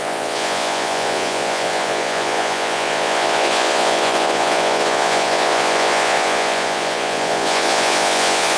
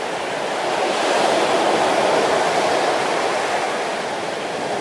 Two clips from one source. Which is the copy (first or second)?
first